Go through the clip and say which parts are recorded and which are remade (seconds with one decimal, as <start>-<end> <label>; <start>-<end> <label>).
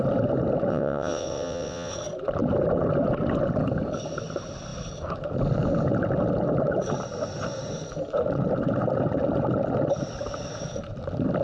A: 0.0-0.7 recorded; 0.7-1.9 remade; 1.9-11.4 recorded